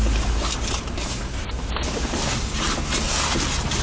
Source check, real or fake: real